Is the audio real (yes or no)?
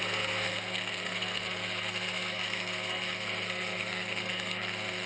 no